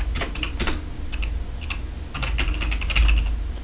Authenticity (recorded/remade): recorded